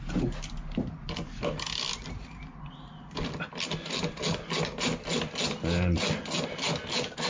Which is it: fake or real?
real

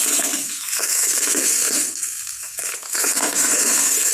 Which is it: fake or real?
fake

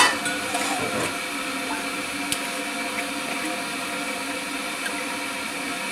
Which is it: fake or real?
real